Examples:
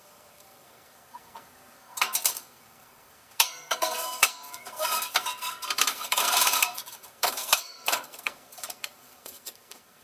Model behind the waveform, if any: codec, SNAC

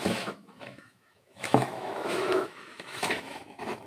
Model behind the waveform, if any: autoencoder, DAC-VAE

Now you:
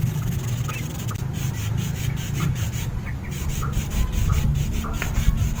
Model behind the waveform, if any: none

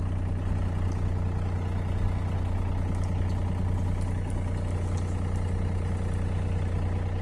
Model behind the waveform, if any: none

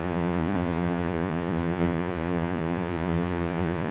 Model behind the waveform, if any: vocoder, Vocos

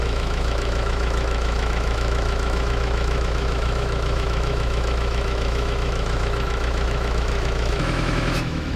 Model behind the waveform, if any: autoencoder, DAC-VAE